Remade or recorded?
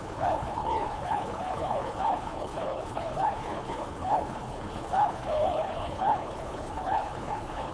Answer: remade